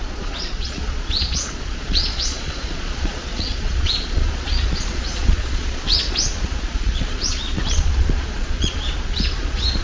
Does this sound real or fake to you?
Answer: fake